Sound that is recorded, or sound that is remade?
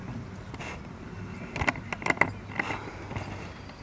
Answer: recorded